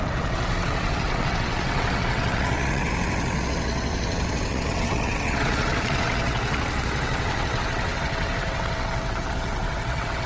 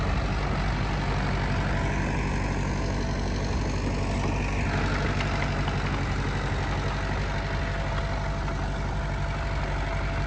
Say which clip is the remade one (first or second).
first